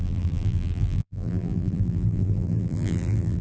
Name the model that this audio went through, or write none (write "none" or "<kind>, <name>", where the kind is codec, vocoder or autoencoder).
vocoder, BigVGAN v2